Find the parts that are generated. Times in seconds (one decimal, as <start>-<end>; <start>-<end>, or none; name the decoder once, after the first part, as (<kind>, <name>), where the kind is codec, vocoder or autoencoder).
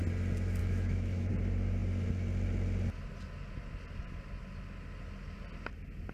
0.6-1.3 (autoencoder, DAC-VAE)